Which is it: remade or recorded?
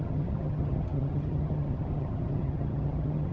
remade